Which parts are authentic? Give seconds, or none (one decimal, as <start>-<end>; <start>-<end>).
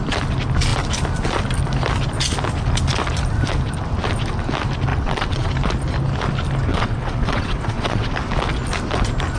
0.0-4.9; 5.5-6.7; 8.1-9.4